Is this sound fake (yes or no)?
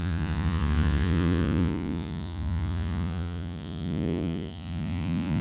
yes